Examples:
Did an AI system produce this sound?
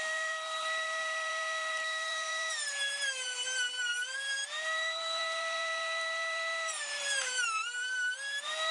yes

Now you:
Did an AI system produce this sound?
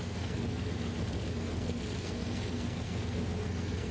yes